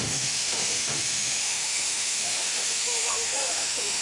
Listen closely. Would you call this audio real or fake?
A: fake